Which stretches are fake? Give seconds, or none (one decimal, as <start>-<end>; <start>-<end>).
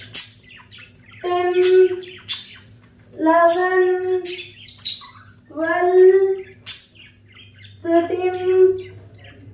none